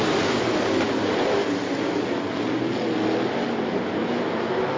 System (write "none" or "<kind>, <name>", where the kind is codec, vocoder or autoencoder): none